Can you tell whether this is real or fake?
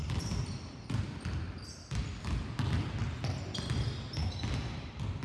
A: real